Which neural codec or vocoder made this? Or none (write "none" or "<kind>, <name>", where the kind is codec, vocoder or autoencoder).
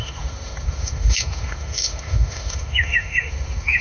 autoencoder, DAC-VAE